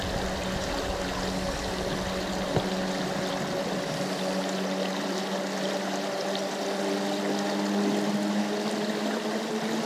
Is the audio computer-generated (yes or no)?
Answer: no